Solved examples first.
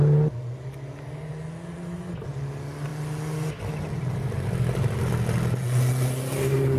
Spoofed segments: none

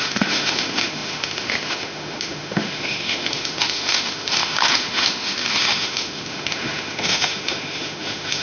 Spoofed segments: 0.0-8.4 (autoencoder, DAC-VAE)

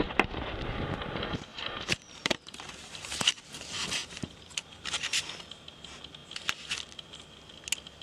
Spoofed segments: 0.0-6.2 (vocoder, BigVGAN v2)

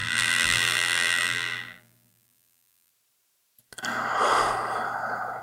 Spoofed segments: 0.0-2.9 (vocoder, BigVGAN v2)

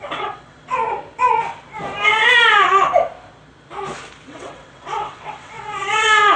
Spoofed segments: 0.0-0.8 (vocoder, WaveNeXt); 2.5-2.9; 4.3-6.4